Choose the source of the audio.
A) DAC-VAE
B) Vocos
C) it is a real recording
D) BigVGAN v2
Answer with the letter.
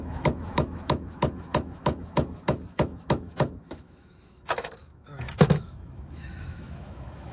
A